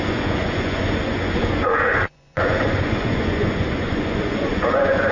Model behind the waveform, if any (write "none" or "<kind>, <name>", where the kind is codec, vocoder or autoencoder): vocoder, Vocos